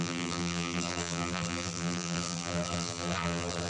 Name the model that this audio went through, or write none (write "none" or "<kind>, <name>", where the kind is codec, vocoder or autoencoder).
vocoder, BigVGAN v2